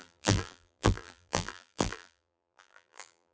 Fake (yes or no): yes